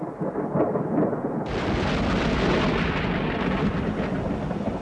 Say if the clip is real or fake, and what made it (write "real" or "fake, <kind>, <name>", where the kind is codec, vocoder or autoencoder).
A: real